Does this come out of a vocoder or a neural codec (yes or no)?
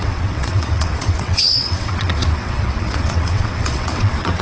yes